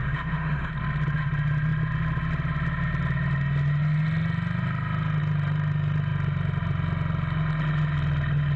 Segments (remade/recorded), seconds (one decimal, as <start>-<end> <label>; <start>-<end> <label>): 0.0-0.7 remade; 0.7-8.6 recorded